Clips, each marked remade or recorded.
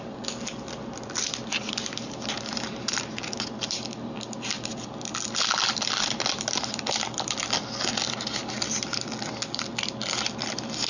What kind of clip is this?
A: recorded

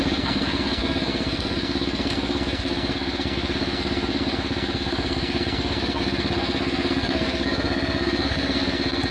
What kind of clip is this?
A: remade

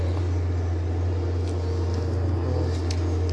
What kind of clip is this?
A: recorded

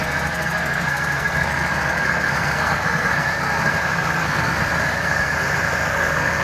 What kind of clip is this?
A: remade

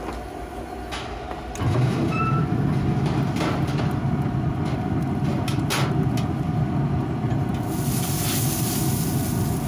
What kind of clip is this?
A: recorded